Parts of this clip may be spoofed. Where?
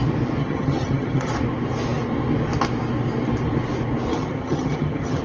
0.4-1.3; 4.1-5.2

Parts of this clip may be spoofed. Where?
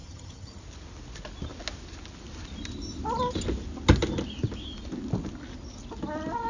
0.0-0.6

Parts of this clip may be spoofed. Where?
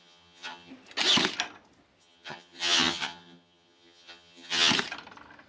0.0-0.7; 2.0-4.7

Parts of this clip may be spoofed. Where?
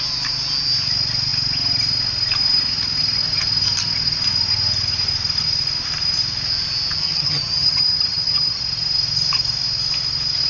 7.0-8.6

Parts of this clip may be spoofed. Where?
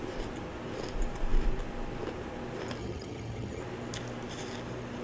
2.8-3.6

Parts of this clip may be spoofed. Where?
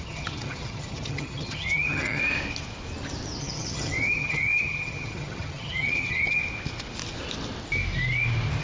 0.0-2.2; 3.4-6.4